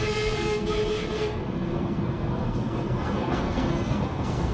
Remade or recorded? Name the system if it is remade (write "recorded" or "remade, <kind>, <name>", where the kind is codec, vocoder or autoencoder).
remade, codec, SNAC